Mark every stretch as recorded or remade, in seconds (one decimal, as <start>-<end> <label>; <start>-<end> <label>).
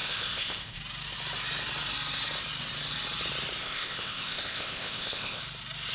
0.0-0.8 remade; 0.8-3.6 recorded; 3.6-5.4 remade; 5.4-5.9 recorded